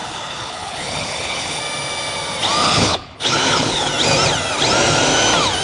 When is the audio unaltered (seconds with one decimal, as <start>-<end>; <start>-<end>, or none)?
1.6-2.6; 3.9-5.6